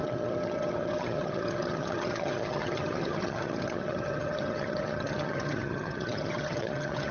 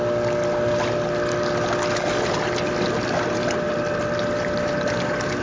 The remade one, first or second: first